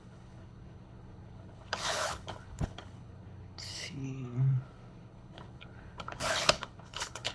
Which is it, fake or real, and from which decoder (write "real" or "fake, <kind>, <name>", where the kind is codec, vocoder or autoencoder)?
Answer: fake, codec, HILCodec